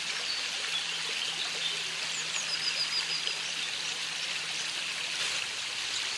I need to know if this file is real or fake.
real